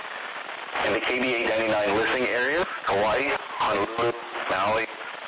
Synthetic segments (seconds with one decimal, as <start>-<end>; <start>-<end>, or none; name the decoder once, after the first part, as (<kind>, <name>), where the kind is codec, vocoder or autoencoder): none